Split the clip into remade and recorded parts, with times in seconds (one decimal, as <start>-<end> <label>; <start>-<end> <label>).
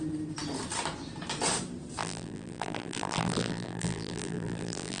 0.0-2.0 recorded; 2.0-5.0 remade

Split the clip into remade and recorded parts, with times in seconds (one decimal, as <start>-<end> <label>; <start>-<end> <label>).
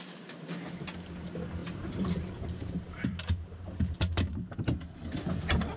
0.0-1.6 recorded; 1.6-3.7 remade; 3.7-5.8 recorded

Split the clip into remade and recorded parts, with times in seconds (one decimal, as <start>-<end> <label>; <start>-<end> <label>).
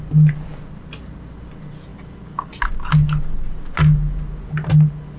0.0-5.2 recorded